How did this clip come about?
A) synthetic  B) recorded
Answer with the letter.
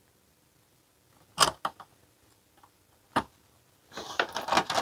B